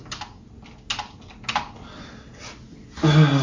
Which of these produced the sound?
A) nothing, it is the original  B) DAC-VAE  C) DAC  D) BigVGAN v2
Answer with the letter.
A